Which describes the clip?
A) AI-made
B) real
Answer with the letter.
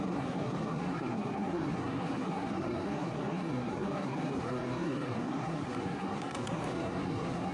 A